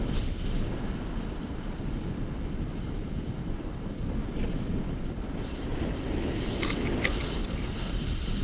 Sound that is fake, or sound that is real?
real